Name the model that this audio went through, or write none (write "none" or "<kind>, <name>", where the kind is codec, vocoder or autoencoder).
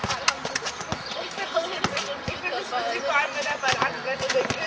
none